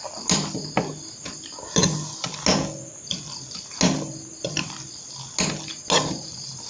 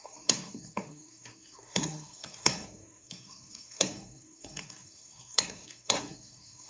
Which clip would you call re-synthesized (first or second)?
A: second